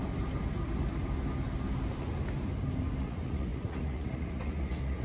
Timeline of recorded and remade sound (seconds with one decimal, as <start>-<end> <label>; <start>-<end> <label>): 0.0-3.0 recorded; 3.0-5.0 remade